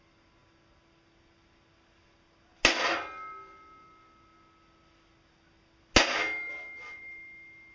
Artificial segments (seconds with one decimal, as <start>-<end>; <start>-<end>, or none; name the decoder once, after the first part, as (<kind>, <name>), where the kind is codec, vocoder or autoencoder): none